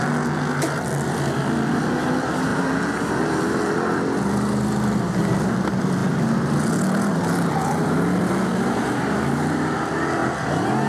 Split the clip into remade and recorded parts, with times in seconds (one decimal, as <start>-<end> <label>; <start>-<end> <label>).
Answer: 0.0-10.9 recorded